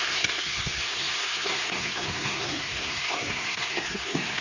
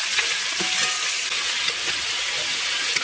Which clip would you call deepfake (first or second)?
first